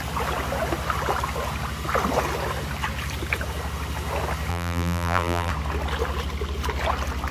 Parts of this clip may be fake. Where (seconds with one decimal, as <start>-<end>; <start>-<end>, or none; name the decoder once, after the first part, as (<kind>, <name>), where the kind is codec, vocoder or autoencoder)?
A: 4.5-5.5 (vocoder, BigVGAN v2)